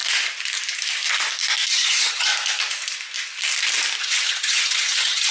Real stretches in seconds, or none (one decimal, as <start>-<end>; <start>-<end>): 0.0-1.7; 2.3-4.0